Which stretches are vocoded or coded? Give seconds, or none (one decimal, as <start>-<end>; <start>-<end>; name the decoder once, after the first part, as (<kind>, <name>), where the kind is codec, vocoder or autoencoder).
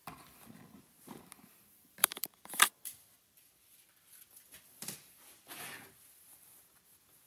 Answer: 2.0-5.6 (vocoder, BigVGAN v2)